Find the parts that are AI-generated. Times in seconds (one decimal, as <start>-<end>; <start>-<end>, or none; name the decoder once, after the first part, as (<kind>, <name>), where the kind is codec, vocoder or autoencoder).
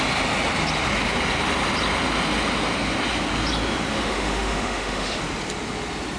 3.9-5.2 (autoencoder, DAC-VAE)